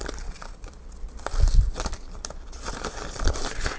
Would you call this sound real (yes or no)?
no